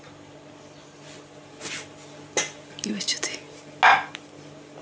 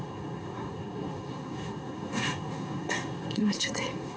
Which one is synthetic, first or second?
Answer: second